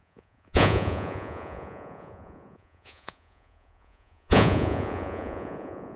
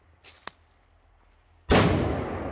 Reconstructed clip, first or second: first